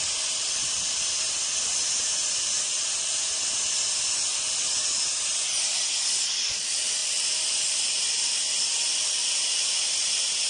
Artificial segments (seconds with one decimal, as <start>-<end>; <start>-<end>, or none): none